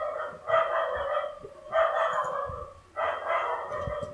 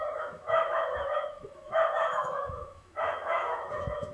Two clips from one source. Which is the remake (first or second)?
second